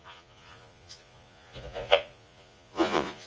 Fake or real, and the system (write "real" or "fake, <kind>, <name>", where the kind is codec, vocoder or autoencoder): fake, vocoder, Vocos